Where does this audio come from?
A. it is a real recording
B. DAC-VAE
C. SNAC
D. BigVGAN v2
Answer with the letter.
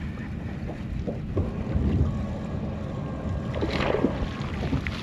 A